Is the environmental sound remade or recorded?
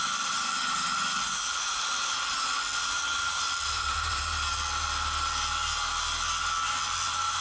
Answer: remade